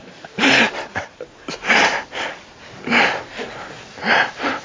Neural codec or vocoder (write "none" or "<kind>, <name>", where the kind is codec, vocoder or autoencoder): none